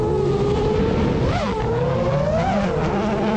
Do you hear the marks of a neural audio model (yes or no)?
no